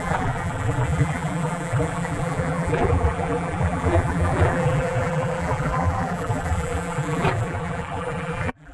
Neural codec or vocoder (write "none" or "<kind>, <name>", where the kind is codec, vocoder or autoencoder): vocoder, BigVGAN v2